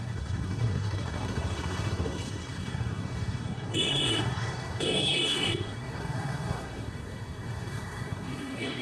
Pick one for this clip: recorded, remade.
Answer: remade